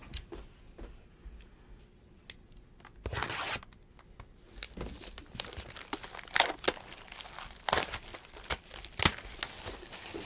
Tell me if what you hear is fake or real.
real